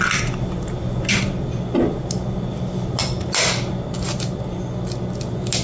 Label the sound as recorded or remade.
recorded